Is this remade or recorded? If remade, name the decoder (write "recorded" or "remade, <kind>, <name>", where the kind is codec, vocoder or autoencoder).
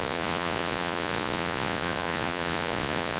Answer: remade, vocoder, Vocos